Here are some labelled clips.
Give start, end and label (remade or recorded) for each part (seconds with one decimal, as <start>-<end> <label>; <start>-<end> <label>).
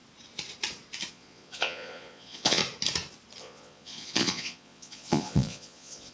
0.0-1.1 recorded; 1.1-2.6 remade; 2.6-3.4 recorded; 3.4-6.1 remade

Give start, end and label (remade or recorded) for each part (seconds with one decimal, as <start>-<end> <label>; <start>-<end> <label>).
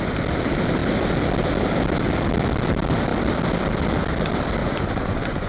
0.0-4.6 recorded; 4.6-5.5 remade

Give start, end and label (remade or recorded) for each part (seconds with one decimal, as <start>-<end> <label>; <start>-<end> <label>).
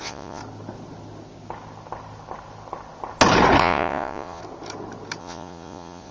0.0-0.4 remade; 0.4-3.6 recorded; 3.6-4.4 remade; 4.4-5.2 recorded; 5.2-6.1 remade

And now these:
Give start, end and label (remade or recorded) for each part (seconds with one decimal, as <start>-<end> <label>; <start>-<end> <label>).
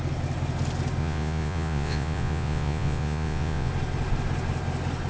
0.0-1.0 recorded; 1.0-3.7 remade; 3.7-5.1 recorded